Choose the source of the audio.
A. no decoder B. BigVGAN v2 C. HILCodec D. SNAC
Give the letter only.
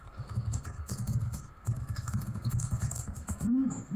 D